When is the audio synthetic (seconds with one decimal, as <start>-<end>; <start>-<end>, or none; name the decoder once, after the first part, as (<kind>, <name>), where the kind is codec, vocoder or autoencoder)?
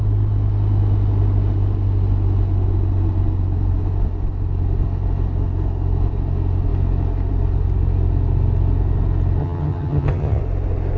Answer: 9.4-10.4 (vocoder, HiFi-GAN)